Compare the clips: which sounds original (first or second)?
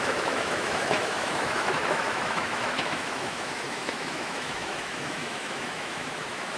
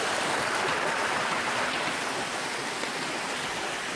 second